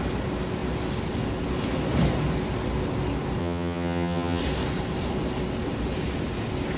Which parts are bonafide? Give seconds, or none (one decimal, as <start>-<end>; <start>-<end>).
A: 0.0-3.4; 4.4-6.8